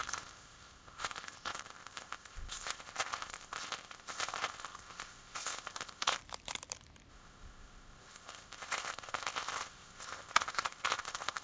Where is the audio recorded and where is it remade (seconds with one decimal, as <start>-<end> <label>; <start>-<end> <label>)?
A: 0.0-6.2 remade; 6.2-7.1 recorded; 7.1-11.4 remade

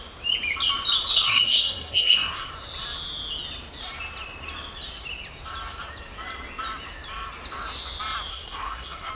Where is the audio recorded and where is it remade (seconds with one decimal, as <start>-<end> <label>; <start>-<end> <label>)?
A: 0.0-1.1 recorded; 1.1-2.5 remade; 2.5-8.3 recorded; 8.3-9.1 remade

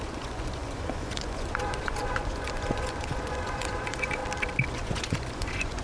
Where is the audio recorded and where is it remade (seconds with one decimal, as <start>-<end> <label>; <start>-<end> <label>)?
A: 0.0-4.2 remade; 4.2-4.7 recorded; 4.7-5.8 remade